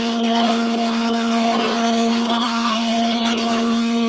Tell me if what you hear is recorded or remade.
remade